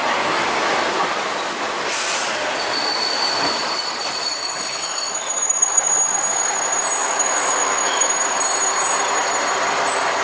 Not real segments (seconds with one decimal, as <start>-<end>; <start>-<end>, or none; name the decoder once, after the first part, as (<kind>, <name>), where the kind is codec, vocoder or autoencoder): 4.4-5.9 (autoencoder, DAC-VAE); 7.0-8.1